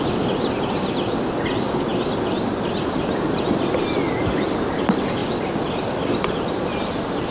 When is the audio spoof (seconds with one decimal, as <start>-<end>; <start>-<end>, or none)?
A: 5.2-6.2